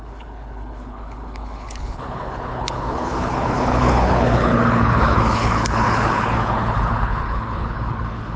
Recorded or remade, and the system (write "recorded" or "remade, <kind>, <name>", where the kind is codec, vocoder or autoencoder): remade, codec, HILCodec